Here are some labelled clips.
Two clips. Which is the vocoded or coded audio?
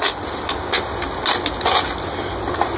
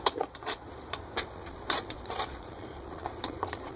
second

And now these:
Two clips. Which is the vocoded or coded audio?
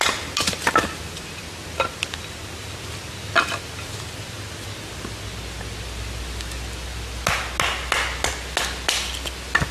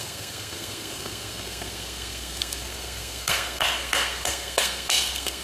second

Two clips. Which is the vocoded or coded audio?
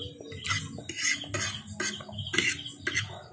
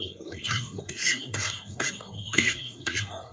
second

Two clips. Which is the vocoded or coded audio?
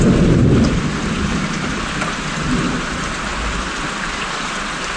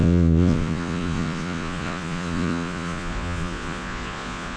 second